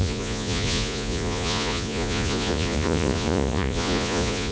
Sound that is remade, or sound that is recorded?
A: remade